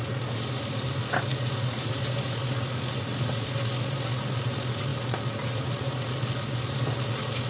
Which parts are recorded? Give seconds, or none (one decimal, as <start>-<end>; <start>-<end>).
0.0-1.3; 1.9-4.9; 6.2-7.5